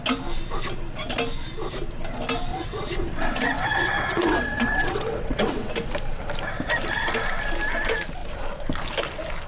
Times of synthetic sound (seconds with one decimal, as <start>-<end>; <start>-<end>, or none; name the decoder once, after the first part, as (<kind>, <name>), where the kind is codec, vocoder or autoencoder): 2.5-5.7 (vocoder, WaveNeXt)

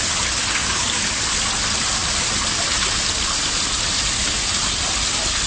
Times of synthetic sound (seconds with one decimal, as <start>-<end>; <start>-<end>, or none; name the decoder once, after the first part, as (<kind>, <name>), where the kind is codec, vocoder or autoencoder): 0.6-1.2 (codec, DAC)